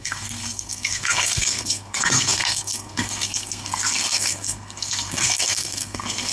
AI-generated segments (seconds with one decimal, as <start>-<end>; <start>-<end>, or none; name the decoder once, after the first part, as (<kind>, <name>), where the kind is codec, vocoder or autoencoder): 0.0-6.3 (codec, SNAC)